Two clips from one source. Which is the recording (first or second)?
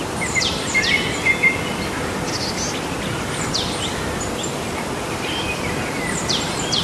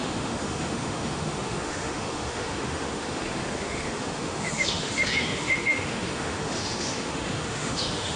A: first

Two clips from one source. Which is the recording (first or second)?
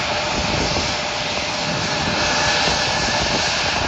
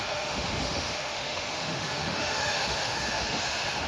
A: first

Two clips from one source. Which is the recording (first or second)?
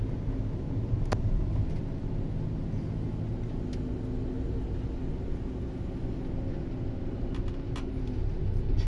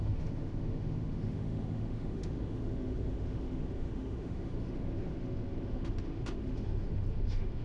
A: first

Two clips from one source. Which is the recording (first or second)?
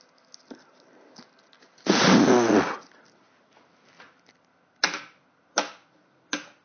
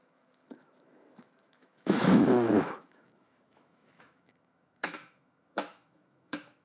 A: first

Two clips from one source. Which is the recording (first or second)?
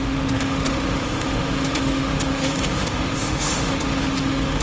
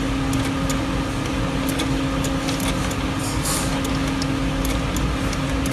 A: second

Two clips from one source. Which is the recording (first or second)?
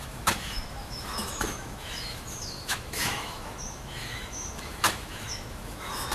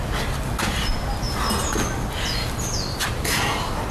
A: second